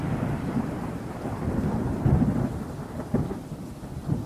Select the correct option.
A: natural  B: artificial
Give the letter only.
B